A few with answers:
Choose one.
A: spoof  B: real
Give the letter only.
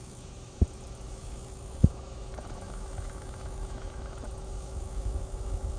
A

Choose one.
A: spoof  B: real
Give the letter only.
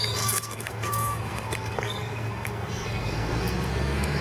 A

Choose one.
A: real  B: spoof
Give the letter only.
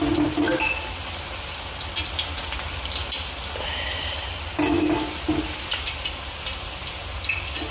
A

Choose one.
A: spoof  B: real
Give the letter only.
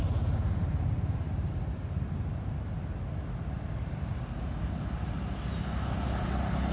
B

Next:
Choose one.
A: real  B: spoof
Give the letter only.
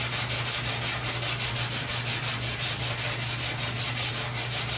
A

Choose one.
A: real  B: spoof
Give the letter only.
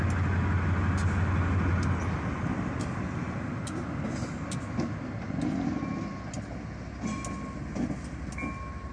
A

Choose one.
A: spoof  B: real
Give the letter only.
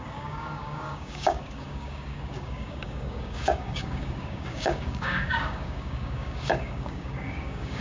A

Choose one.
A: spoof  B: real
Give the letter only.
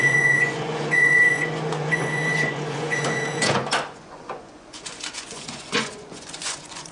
A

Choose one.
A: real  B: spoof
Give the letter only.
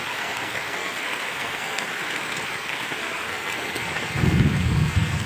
B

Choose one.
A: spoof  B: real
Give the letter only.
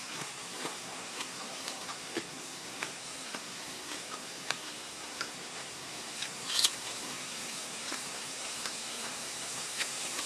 A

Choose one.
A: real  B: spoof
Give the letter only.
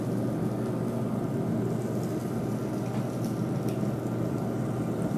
A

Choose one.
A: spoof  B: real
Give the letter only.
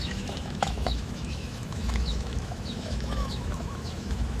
A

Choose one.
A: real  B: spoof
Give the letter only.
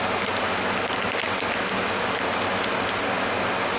A